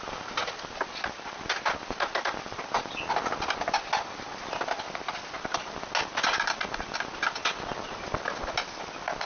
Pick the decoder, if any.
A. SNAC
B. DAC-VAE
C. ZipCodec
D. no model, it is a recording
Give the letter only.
D